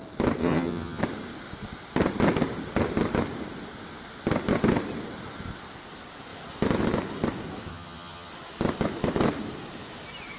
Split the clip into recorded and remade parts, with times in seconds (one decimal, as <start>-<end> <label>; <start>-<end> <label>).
0.0-0.4 recorded; 0.4-1.0 remade; 1.0-7.7 recorded; 7.7-8.3 remade; 8.3-10.4 recorded